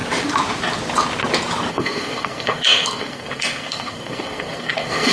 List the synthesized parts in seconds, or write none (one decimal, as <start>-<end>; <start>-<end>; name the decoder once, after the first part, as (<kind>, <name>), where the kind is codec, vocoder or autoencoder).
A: 1.7-5.1 (codec, SNAC)